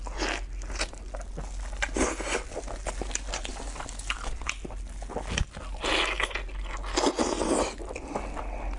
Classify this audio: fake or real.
real